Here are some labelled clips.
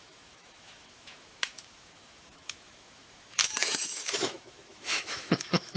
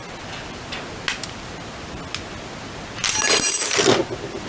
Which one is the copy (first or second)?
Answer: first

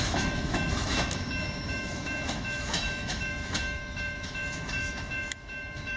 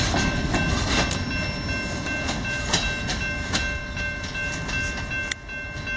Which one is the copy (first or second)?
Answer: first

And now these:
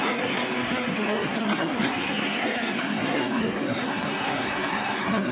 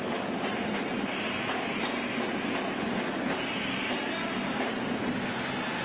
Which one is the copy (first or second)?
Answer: first